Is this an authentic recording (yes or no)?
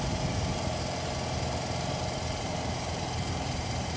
no